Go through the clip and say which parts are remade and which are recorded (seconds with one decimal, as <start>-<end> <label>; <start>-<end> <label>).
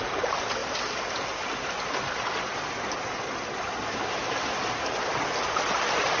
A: 0.0-6.2 recorded